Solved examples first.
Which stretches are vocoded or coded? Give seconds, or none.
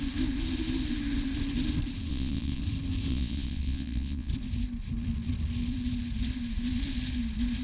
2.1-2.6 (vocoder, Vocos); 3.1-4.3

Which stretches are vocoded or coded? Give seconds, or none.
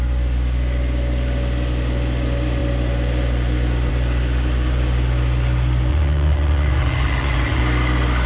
5.9-7.6 (vocoder, Vocos)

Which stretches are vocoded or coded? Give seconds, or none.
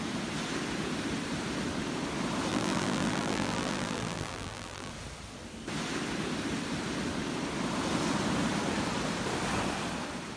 2.5-4.9 (vocoder, BigVGAN v2)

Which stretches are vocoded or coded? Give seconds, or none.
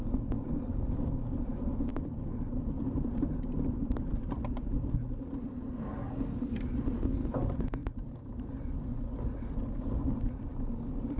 1.9-4.1 (vocoder, BigVGAN v2); 7.8-8.5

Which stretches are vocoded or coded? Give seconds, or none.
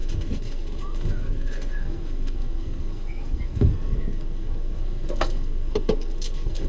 0.0-6.7 (codec, SNAC)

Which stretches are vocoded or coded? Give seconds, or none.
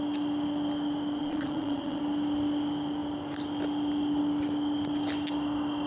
1.2-2.0 (vocoder, Vocos)